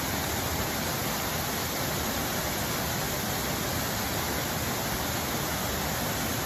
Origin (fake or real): real